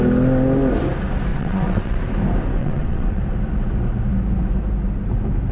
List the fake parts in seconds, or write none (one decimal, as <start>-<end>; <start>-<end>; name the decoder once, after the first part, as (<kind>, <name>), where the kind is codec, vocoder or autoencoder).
1.3-2.0 (vocoder, WaveNeXt); 2.6-3.2